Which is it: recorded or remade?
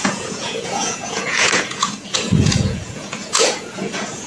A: remade